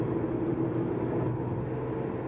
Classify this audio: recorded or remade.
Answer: recorded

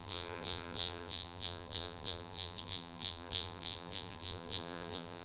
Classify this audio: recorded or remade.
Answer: remade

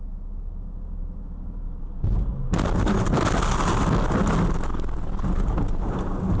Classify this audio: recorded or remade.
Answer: recorded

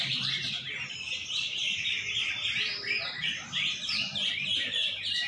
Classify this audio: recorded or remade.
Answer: remade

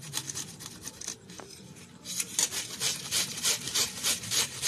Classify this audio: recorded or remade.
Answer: remade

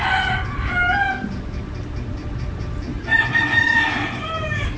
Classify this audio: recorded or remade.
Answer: recorded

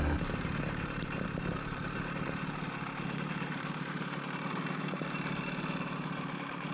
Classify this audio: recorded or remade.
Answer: remade